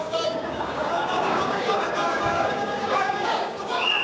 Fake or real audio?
fake